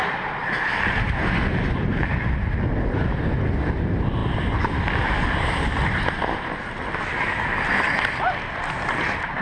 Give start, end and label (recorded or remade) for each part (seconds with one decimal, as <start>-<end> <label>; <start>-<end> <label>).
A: 0.0-9.4 recorded